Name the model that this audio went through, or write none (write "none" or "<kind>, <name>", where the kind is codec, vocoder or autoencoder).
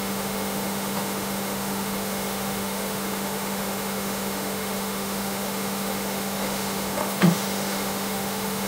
autoencoder, DAC-VAE